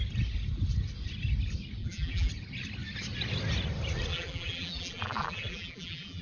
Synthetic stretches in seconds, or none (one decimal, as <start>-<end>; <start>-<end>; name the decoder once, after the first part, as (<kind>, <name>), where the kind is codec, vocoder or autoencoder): 1.8-2.3 (vocoder, BigVGAN v2); 4.1-6.2